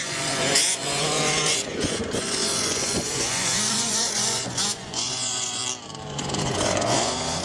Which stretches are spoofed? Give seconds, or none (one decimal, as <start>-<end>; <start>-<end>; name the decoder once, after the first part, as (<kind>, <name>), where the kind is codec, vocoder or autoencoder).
0.0-5.6 (vocoder, Vocos); 6.1-7.4